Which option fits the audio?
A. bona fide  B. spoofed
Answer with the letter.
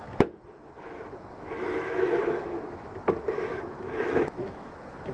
B